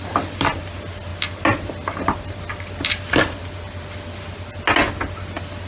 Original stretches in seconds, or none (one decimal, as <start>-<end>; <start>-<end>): 0.0-5.7